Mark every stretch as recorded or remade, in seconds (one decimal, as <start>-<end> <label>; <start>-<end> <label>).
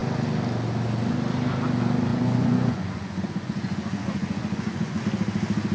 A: 0.0-2.1 recorded; 2.1-5.0 remade; 5.0-5.7 recorded